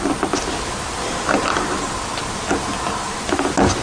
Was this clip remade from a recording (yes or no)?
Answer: no